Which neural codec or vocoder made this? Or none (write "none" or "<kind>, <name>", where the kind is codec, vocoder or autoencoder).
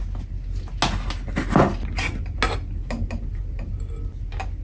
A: none